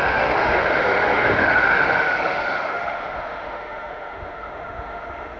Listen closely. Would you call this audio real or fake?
fake